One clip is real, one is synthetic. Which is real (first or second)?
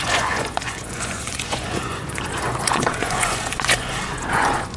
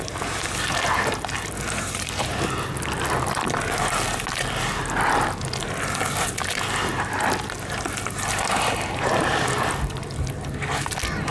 second